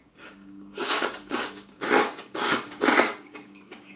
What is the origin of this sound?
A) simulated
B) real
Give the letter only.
A